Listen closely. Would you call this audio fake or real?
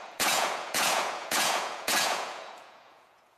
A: fake